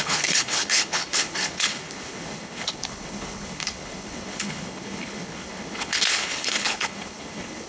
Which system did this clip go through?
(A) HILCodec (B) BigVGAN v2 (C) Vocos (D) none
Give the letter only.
A